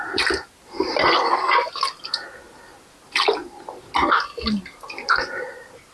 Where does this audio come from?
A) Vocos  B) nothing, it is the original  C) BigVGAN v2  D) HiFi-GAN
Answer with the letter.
B